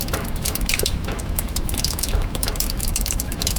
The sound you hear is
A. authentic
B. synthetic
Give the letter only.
B